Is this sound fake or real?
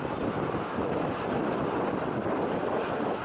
real